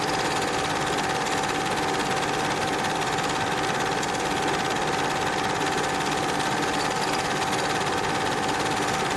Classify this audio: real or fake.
real